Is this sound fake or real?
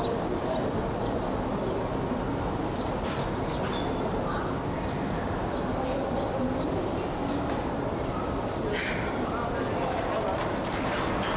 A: real